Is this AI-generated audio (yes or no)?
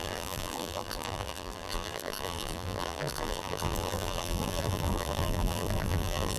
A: yes